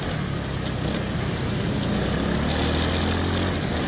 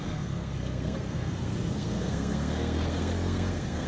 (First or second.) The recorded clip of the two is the first